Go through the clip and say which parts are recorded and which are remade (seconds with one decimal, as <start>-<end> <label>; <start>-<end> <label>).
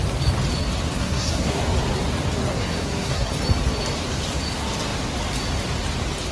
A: 0.0-1.0 recorded; 1.0-1.6 remade; 1.6-2.5 recorded; 2.5-3.3 remade; 3.3-6.3 recorded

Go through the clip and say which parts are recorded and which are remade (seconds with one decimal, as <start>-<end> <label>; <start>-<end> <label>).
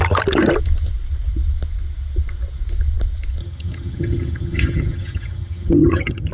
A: 0.0-3.4 recorded; 3.4-6.3 remade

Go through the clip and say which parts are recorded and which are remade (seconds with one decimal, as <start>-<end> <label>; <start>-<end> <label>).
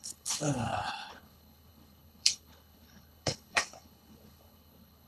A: 0.0-5.1 remade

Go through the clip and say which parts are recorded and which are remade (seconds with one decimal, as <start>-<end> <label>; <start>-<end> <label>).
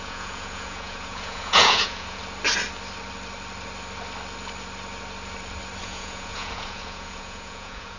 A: 0.0-2.2 remade; 2.2-5.8 recorded; 5.8-8.0 remade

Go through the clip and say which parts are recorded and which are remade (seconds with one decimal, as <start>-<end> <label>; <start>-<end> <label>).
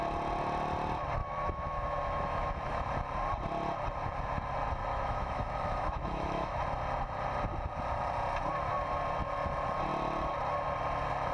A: 0.0-1.2 recorded; 1.2-2.9 remade; 2.9-4.9 recorded; 4.9-6.6 remade; 6.6-11.3 recorded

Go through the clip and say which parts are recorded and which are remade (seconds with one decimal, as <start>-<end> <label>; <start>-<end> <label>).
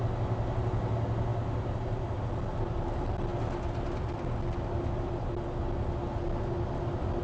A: 0.0-7.2 recorded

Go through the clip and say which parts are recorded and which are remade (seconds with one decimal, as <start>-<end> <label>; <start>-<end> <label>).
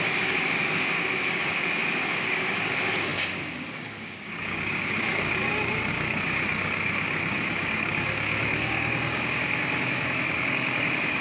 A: 0.0-11.2 remade